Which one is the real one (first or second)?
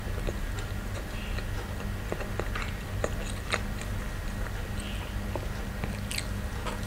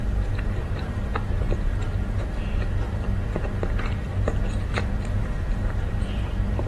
first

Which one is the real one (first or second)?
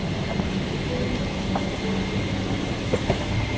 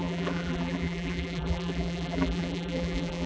first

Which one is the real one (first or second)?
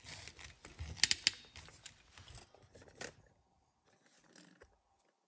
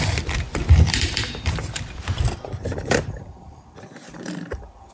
first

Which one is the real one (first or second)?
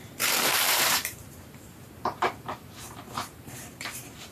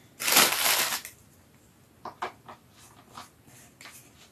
second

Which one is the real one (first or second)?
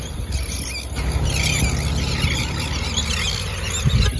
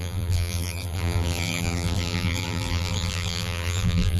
first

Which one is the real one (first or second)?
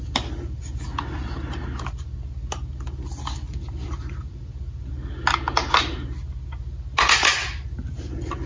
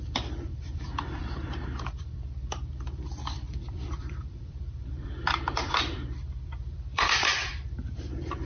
first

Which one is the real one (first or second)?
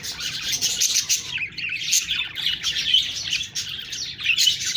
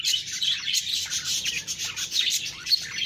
first